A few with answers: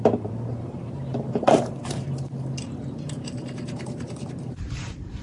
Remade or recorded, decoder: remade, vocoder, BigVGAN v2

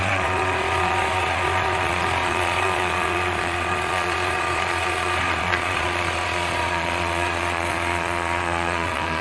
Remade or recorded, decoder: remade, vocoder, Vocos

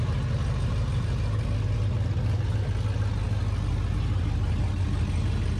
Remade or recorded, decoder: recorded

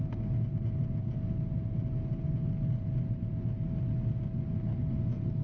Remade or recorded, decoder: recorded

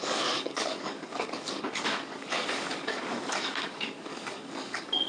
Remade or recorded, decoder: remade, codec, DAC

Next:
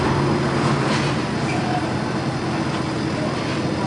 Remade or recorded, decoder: recorded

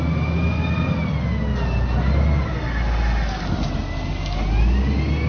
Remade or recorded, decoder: recorded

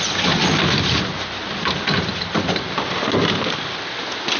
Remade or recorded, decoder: recorded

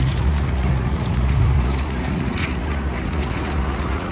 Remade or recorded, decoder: remade, vocoder, Vocos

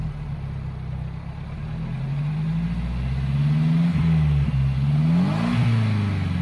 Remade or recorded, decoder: recorded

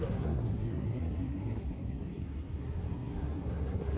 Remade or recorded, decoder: remade, codec, SNAC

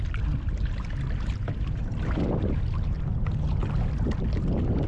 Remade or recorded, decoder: recorded